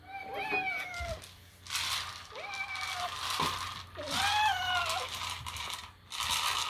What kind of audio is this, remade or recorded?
recorded